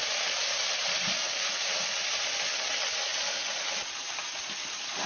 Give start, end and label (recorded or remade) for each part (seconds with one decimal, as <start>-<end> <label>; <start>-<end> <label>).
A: 0.0-3.1 remade; 3.1-4.5 recorded; 4.5-5.1 remade

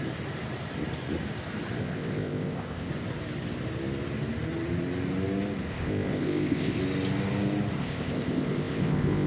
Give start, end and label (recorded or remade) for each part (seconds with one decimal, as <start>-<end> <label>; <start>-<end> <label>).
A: 0.0-1.8 recorded; 1.8-2.9 remade; 2.9-5.7 recorded; 5.7-6.8 remade; 6.8-7.8 recorded; 7.8-9.3 remade

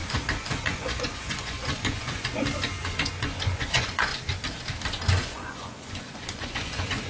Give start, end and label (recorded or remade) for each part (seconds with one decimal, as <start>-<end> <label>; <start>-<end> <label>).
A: 0.0-2.3 remade; 2.3-2.9 recorded; 2.9-4.1 remade; 4.1-5.2 recorded; 5.2-7.1 remade

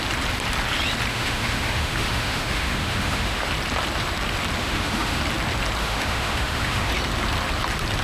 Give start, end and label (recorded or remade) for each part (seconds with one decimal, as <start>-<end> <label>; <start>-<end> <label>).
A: 0.0-1.1 recorded; 1.1-3.5 remade; 3.5-4.6 recorded; 4.6-5.2 remade; 5.2-5.8 recorded; 5.8-6.9 remade; 6.9-8.0 recorded

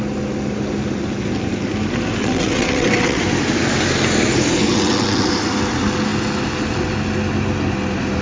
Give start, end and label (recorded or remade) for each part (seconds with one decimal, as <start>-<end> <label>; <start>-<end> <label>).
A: 0.0-2.2 recorded; 2.2-3.2 remade; 3.2-4.7 recorded; 4.7-5.3 remade; 5.3-8.2 recorded

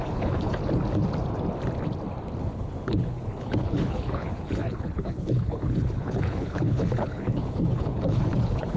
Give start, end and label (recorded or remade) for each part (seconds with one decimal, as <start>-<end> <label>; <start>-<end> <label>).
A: 0.0-0.6 remade; 0.6-2.4 recorded; 2.4-8.8 remade